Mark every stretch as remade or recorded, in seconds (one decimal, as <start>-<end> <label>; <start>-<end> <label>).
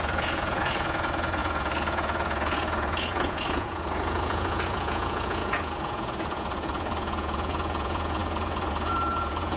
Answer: 0.0-9.6 remade